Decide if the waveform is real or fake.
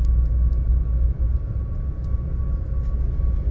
real